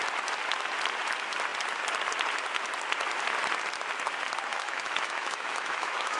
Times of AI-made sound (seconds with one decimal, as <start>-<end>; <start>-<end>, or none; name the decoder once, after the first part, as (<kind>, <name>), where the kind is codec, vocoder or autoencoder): 4.5-6.2 (autoencoder, DAC-VAE)